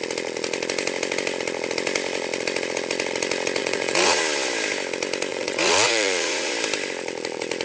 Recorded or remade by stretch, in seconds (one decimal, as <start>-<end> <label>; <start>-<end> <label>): 0.0-3.6 recorded; 3.6-4.2 remade; 4.2-5.3 recorded; 5.3-6.5 remade; 6.5-7.6 recorded